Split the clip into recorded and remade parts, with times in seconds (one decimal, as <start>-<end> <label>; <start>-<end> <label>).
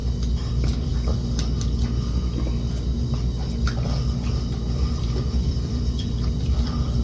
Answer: 0.0-0.5 recorded; 0.5-0.9 remade; 0.9-4.9 recorded; 4.9-7.0 remade